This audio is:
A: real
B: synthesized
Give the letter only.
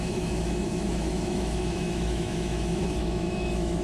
B